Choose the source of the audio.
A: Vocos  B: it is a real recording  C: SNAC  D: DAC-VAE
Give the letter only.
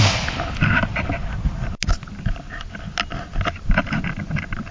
B